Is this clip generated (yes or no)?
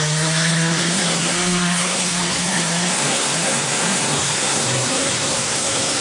yes